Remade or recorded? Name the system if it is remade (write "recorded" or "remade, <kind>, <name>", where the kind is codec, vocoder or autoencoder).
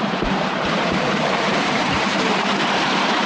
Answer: remade, vocoder, BigVGAN v2